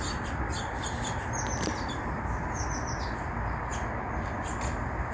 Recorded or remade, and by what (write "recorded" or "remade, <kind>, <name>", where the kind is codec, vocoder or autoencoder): recorded